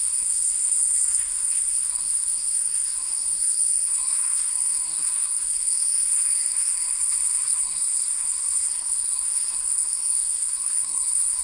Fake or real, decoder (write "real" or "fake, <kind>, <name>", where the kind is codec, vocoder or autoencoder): fake, codec, SNAC